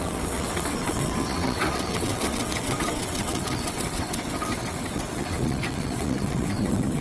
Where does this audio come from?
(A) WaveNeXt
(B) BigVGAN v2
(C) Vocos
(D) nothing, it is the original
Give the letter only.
A